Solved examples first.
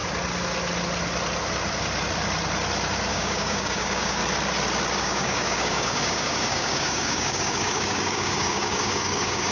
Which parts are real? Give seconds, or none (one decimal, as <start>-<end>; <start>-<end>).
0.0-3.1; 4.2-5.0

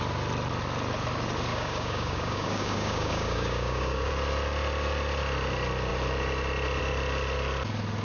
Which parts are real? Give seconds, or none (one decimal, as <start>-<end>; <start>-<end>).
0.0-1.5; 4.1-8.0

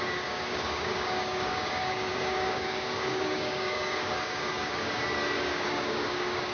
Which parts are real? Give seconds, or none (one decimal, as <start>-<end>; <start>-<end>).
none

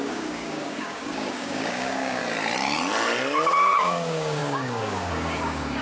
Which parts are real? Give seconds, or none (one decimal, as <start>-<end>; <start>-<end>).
2.2-3.8

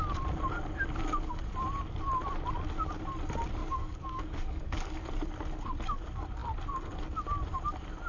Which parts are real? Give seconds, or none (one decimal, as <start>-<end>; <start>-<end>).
0.0-3.6; 5.0-8.1

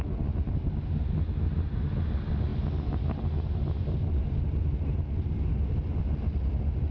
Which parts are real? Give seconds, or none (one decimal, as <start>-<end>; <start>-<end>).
0.0-6.9

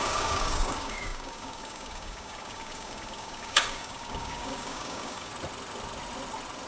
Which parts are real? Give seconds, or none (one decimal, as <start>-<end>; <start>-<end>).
5.3-6.7